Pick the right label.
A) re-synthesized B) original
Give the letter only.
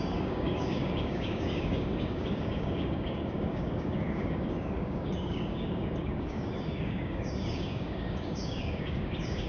A